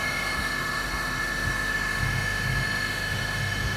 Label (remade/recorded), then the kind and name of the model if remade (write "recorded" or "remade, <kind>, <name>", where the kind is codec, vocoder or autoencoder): remade, autoencoder, DAC-VAE